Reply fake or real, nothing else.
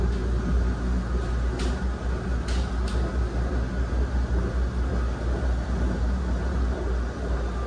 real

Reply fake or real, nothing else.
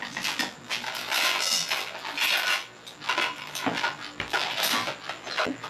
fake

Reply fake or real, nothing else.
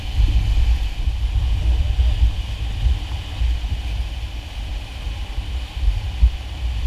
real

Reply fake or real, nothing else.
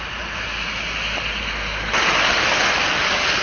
real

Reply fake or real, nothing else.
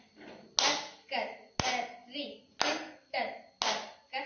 real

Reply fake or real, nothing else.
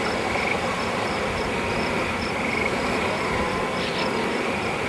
fake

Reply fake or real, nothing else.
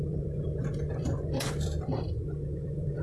fake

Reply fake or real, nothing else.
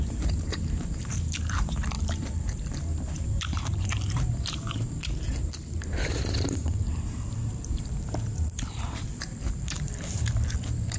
fake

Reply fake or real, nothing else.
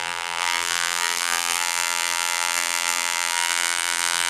fake